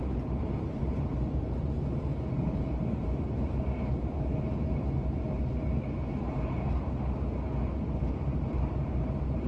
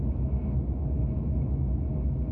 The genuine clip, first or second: second